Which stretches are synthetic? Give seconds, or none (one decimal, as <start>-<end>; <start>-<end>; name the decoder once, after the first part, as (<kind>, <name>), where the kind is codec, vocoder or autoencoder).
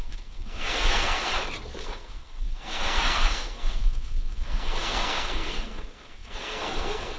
0.0-1.3 (codec, SNAC); 1.8-7.2